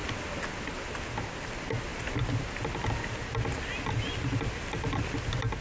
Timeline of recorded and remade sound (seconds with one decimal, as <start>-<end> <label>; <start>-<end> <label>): 0.0-5.6 recorded